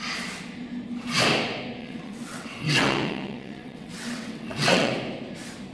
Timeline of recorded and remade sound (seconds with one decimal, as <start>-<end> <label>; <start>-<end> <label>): 0.0-1.8 recorded; 1.8-4.9 remade; 4.9-5.7 recorded